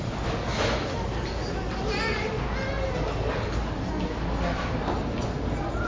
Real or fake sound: real